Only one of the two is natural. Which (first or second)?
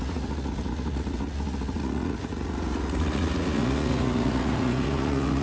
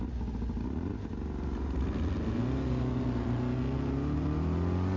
second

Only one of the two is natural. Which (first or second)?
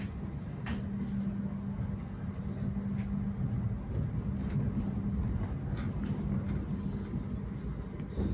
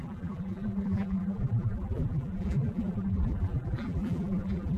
first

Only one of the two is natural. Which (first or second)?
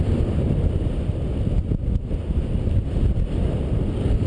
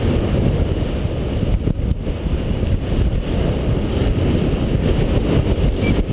second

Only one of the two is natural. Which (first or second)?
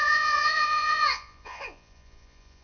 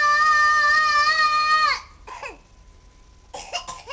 second